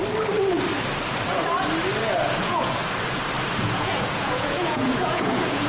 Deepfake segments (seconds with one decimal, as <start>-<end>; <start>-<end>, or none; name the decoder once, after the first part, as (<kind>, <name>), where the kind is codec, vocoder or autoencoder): 2.4-2.8 (vocoder, Vocos); 3.6-5.7